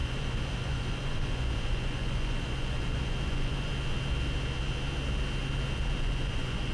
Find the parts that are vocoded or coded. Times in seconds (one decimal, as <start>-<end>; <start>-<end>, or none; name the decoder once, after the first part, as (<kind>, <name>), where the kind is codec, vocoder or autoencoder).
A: 0.0-3.7 (vocoder, Vocos); 6.0-6.7